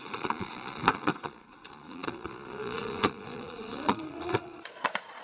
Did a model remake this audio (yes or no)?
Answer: yes